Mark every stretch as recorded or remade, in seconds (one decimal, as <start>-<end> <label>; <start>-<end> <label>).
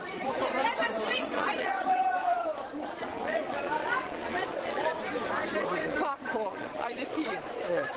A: 0.0-4.9 remade; 4.9-5.6 recorded; 5.6-8.0 remade